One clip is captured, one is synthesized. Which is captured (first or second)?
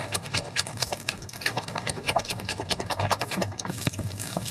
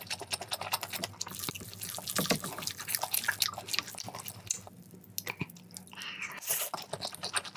second